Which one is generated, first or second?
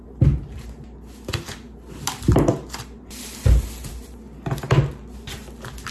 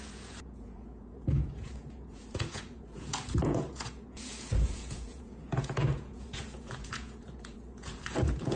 second